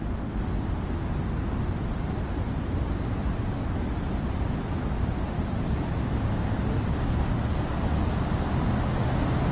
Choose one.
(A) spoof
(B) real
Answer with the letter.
B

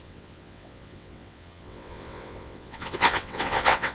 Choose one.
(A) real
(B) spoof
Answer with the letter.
B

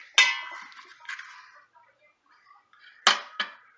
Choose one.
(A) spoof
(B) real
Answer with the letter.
B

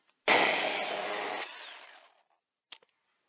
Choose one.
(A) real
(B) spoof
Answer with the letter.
A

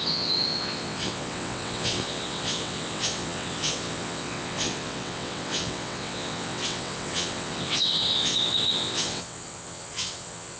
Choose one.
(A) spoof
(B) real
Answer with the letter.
A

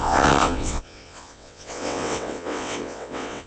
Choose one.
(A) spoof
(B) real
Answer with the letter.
A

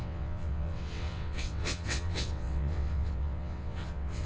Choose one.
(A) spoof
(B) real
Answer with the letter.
A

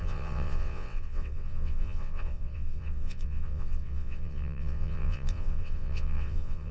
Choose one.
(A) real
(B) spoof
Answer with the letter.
B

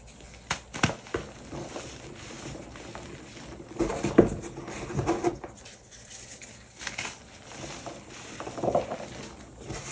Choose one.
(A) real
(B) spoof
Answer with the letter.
A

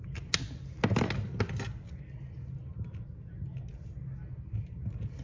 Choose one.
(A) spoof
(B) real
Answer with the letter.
B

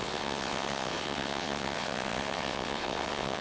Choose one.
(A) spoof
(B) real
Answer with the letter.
A